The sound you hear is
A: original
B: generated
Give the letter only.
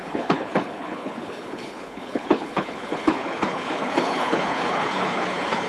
B